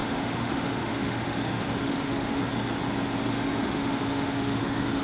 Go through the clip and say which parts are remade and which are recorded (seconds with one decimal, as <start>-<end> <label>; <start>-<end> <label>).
0.0-2.4 remade; 2.4-3.6 recorded; 3.6-5.0 remade